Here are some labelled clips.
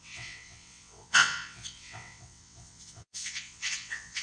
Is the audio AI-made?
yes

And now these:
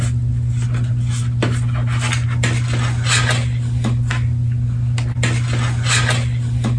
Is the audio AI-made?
no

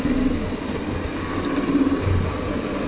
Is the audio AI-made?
no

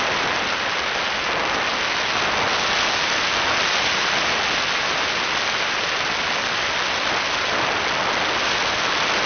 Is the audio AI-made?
no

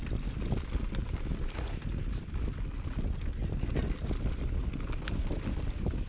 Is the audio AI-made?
no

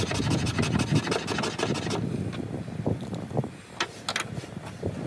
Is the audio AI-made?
no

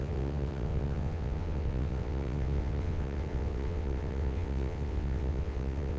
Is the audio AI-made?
yes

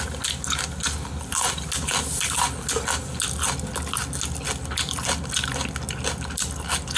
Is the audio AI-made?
no